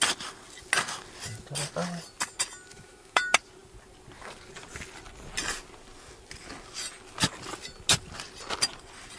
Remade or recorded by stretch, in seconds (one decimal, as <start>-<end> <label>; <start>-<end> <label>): 0.0-2.7 recorded; 2.7-3.2 remade; 3.2-9.2 recorded